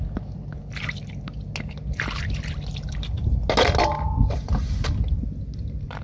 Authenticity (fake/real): real